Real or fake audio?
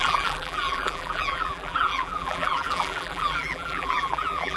fake